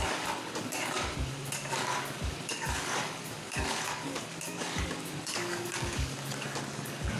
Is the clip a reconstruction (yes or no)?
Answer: yes